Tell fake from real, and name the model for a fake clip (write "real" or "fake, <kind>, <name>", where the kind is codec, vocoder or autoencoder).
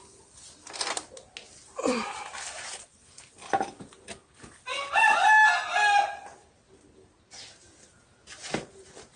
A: real